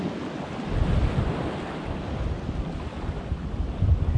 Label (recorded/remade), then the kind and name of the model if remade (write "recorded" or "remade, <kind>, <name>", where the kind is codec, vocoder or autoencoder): recorded